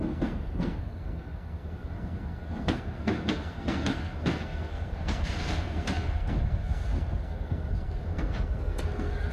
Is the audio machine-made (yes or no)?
yes